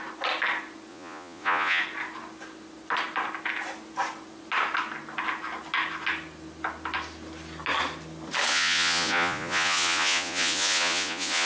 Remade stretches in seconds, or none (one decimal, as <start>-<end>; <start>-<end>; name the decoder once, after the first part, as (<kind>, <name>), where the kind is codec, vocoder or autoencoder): 0.9-1.8 (vocoder, Vocos); 8.5-11.5

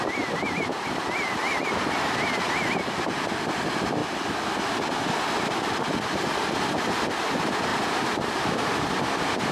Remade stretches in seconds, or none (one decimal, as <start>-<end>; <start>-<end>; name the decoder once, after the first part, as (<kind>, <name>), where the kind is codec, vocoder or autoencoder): 0.0-4.0 (vocoder, BigVGAN v2); 4.6-7.7; 8.4-9.5

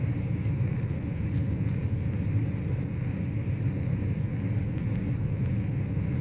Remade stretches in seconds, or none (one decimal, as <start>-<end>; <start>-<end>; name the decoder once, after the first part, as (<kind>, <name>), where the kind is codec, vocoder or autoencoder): none

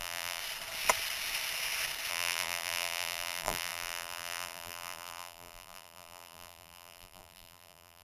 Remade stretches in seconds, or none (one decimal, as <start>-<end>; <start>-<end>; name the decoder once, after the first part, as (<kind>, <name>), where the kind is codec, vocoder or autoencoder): 0.0-0.4 (vocoder, BigVGAN v2); 2.1-8.0